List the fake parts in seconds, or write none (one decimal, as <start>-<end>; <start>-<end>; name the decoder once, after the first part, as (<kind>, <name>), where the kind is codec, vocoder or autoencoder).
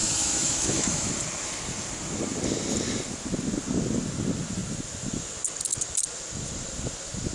0.0-1.1 (autoencoder, DAC-VAE)